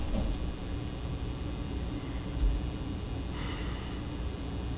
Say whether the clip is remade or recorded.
recorded